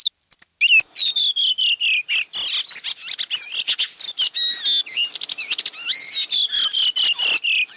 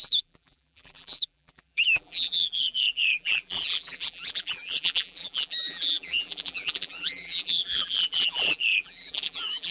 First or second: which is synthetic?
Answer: second